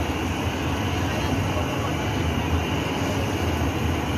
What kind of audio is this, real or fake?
real